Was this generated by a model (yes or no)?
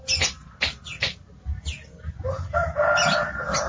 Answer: no